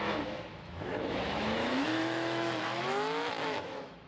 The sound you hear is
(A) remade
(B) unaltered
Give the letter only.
A